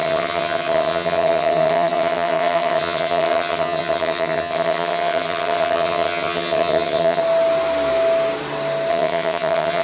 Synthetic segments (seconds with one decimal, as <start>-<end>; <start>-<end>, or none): 0.0-7.2; 8.9-9.8